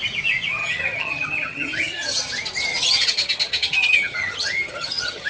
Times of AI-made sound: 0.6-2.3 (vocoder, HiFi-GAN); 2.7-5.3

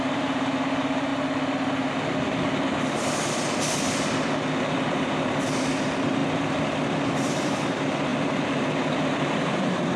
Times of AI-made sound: 0.0-1.1 (vocoder, BigVGAN v2); 4.9-6.2; 7.3-10.0

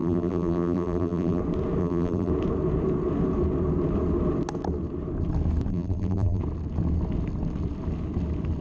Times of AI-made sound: 0.0-1.4 (vocoder, BigVGAN v2); 1.8-2.3; 5.7-6.4